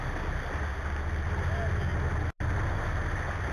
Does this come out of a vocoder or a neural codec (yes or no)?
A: no